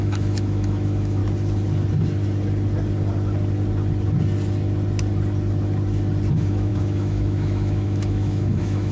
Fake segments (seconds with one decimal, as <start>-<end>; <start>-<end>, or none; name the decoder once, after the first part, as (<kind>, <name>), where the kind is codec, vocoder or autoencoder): 0.0-1.2 (autoencoder, DAC-VAE); 6.3-8.9